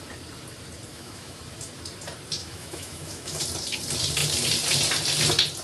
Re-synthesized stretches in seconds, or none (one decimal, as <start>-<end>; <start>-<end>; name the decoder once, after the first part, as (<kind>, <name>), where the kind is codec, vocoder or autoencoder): 0.9-1.4 (autoencoder, DAC-VAE); 2.4-3.4